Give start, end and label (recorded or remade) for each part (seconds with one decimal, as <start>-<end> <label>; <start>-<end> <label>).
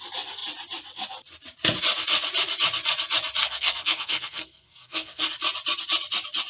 0.0-3.4 recorded; 3.4-5.3 remade; 5.3-6.5 recorded